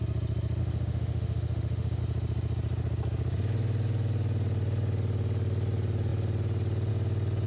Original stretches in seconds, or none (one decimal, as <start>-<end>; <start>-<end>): 0.0-0.6; 2.0-7.5